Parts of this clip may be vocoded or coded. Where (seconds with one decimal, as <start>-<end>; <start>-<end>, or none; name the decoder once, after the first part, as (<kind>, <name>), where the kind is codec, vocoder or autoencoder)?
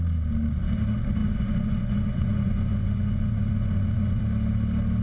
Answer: 1.2-4.2 (vocoder, Vocos)